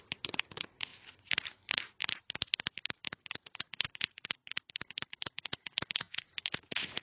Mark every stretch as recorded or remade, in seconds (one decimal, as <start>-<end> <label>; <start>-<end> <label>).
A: 0.0-0.9 remade; 0.9-3.3 recorded; 3.3-4.4 remade; 4.4-4.9 recorded; 4.9-7.0 remade